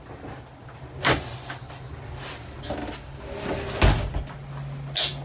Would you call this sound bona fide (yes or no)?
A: yes